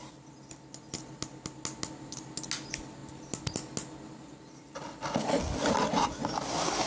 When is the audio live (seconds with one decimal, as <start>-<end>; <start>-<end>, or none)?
0.0-6.9